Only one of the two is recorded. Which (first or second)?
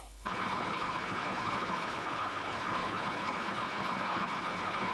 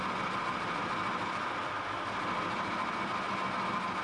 second